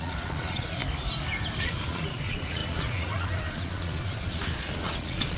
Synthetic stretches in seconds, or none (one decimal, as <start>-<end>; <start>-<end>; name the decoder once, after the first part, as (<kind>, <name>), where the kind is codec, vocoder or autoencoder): 0.0-0.8 (vocoder, Vocos); 1.6-5.4